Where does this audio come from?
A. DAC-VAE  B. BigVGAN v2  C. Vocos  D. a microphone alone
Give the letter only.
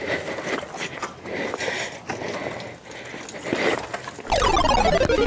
D